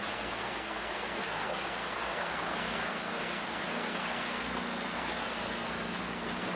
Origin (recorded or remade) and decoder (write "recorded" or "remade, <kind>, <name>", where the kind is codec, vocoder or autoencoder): remade, codec, SNAC